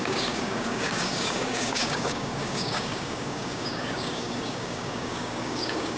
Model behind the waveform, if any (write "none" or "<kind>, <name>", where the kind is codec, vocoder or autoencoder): codec, DAC